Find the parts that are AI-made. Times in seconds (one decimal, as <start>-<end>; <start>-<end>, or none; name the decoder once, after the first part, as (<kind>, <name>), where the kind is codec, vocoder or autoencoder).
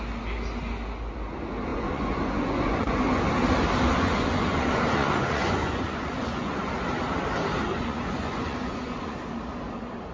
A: 1.7-3.2 (vocoder, Vocos); 3.9-6.7; 7.7-9.2